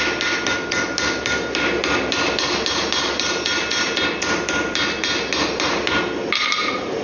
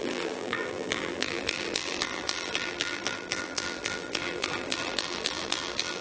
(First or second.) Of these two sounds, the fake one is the second